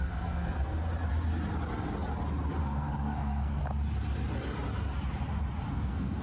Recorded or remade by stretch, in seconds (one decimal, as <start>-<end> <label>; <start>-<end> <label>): 0.0-0.8 remade; 0.8-2.6 recorded; 2.6-3.6 remade; 3.6-5.7 recorded; 5.7-6.2 remade